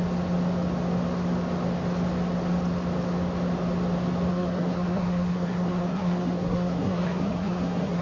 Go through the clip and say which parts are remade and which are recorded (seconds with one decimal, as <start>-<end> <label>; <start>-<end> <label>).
0.0-4.3 recorded; 4.3-8.0 remade